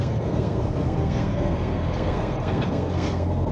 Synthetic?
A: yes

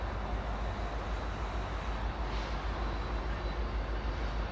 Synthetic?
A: no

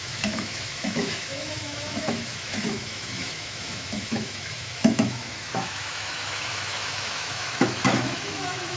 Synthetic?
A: yes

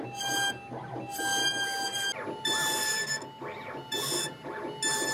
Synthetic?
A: no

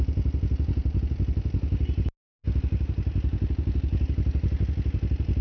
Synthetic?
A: no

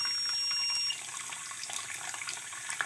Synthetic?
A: no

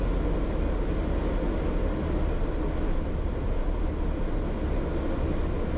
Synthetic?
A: no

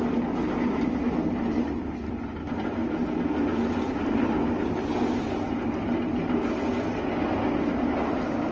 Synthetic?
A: no